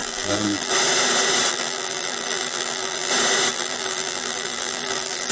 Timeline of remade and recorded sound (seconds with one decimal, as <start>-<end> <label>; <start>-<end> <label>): 0.0-0.7 remade; 0.7-1.5 recorded; 1.5-3.1 remade; 3.1-3.5 recorded; 3.5-5.3 remade